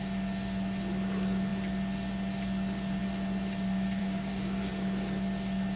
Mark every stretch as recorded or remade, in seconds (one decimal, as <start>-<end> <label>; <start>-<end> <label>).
0.0-4.0 recorded; 4.0-4.7 remade; 4.7-5.8 recorded